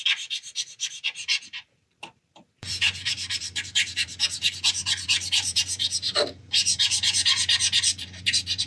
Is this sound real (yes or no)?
no